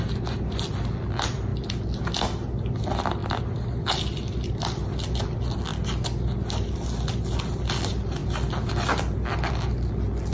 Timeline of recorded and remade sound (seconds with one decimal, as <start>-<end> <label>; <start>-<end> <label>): 0.0-10.3 recorded